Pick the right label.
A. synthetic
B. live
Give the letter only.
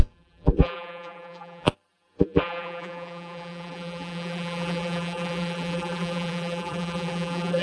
A